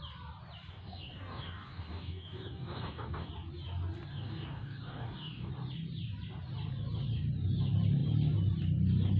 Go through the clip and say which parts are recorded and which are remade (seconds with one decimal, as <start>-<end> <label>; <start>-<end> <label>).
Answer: 0.0-0.7 recorded; 0.7-3.3 remade; 3.3-4.1 recorded; 4.1-5.5 remade; 5.5-9.2 recorded